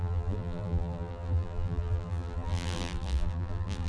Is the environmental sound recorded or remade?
remade